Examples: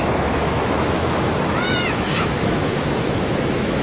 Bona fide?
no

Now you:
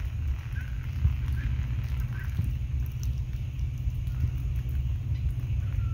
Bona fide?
yes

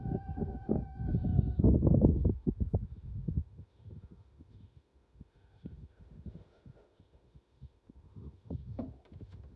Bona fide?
no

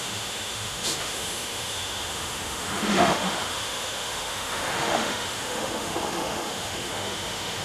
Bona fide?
no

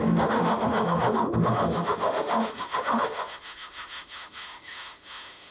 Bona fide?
no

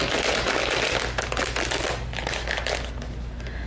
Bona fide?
yes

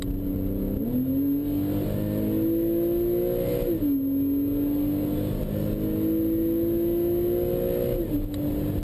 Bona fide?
yes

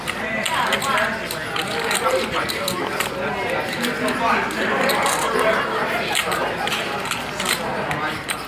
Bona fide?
yes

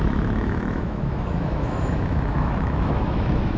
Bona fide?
no